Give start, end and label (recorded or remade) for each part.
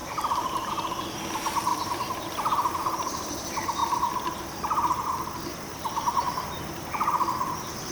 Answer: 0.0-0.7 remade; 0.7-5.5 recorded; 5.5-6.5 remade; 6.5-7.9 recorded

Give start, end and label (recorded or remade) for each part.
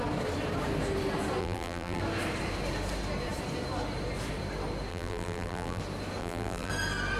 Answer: 0.0-1.4 recorded; 1.4-2.0 remade; 2.0-4.9 recorded; 4.9-5.8 remade; 5.8-6.2 recorded; 6.2-6.7 remade; 6.7-7.2 recorded